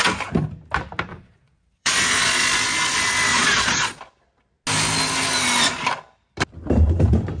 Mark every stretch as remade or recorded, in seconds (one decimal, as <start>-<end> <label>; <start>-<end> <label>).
0.0-1.1 recorded; 1.1-1.9 remade; 1.9-3.3 recorded; 3.3-4.0 remade; 4.0-7.4 recorded